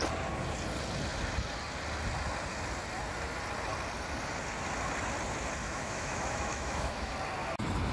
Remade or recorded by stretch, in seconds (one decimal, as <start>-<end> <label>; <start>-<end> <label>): 0.0-5.6 recorded; 5.6-7.1 remade; 7.1-7.9 recorded

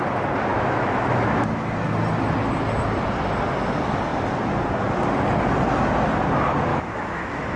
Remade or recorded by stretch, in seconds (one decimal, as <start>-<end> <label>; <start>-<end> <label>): 0.0-0.5 recorded; 0.5-1.9 remade; 1.9-6.7 recorded; 6.7-7.6 remade

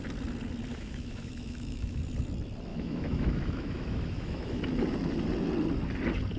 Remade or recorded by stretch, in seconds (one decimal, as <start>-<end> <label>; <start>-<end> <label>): 0.0-0.7 recorded; 0.7-2.0 remade; 2.0-2.7 recorded; 2.7-4.6 remade; 4.6-6.4 recorded

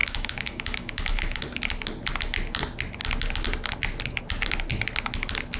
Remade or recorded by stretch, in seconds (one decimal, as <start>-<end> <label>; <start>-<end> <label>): 0.0-1.4 remade; 1.4-5.6 recorded

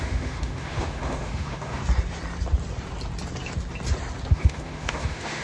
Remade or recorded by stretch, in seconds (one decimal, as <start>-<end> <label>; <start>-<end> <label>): 0.0-1.8 remade; 1.8-4.3 recorded; 4.3-5.4 remade

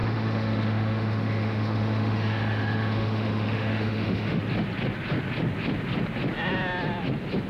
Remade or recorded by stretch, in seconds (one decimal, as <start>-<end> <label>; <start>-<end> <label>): 0.0-4.4 remade; 4.4-7.5 recorded